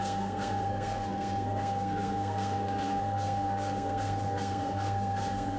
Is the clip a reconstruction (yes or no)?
yes